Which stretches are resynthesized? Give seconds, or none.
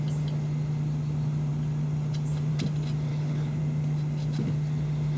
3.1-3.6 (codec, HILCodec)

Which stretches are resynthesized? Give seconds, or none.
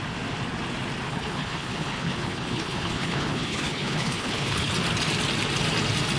1.1-4.7 (codec, HILCodec)